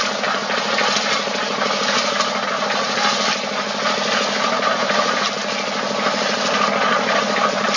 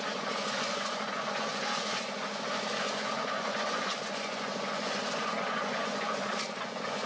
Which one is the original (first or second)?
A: first